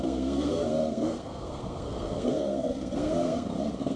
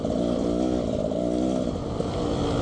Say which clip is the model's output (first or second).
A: first